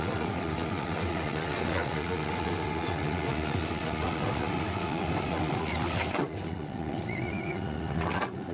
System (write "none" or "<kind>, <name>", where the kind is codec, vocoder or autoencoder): vocoder, WaveNeXt